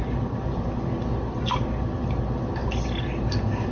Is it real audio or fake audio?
real